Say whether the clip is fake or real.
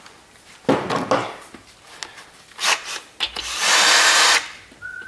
real